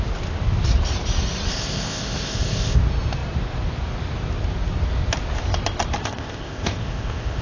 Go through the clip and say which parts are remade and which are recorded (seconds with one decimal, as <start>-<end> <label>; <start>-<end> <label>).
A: 0.0-1.5 recorded; 1.5-2.8 remade; 2.8-6.0 recorded; 6.0-7.4 remade